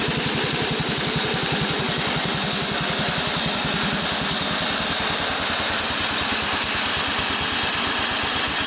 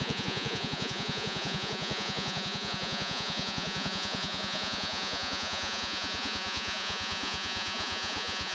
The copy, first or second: second